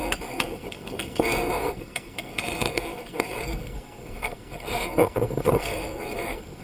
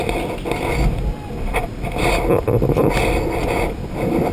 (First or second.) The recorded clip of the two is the second